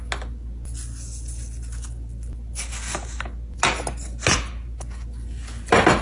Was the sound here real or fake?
real